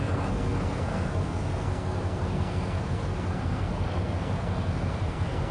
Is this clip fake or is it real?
fake